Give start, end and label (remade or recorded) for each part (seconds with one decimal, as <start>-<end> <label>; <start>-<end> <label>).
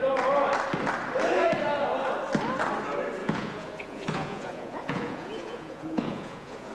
0.0-3.2 recorded; 3.2-6.7 remade